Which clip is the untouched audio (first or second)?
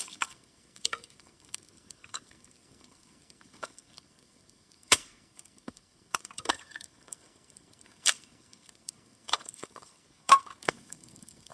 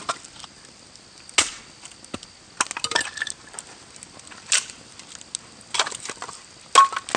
second